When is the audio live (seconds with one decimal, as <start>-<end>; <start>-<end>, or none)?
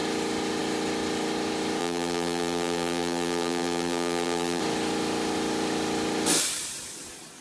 0.0-1.8; 4.6-7.4